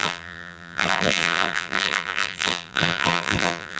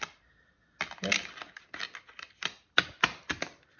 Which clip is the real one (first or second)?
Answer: second